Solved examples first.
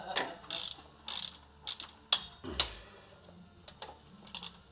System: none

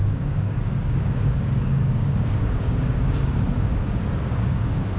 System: codec, DAC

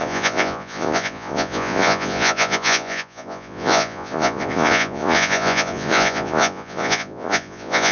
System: vocoder, Vocos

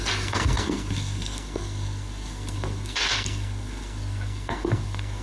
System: codec, SNAC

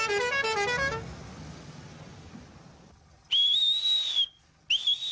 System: none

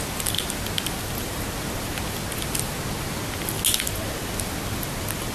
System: none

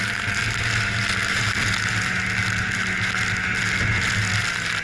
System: none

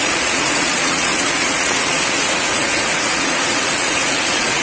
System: vocoder, Vocos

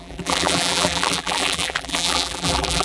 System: vocoder, BigVGAN v2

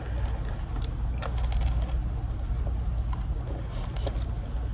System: none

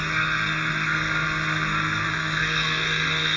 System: codec, SNAC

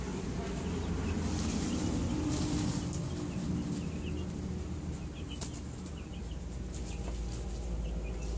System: none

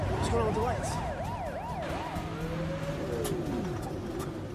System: none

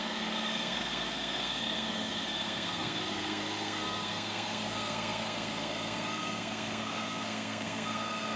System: codec, SNAC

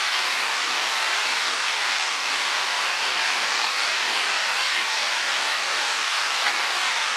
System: codec, DAC